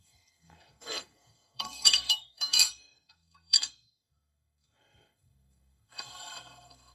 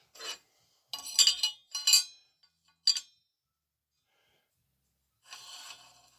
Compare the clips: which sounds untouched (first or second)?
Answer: second